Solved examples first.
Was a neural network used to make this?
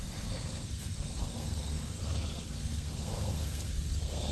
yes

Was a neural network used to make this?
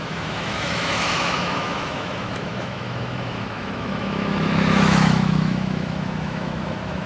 yes